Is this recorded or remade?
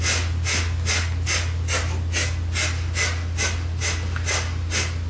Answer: recorded